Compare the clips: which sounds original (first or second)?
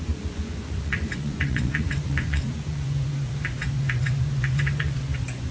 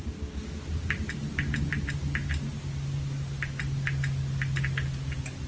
second